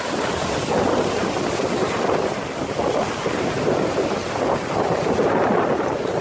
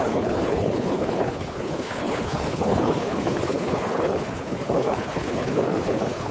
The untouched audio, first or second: first